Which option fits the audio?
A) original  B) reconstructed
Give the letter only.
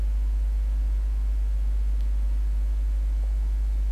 A